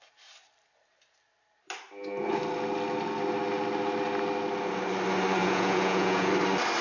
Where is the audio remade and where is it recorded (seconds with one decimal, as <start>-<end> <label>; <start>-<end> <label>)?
0.0-5.4 recorded; 5.4-6.3 remade; 6.3-6.8 recorded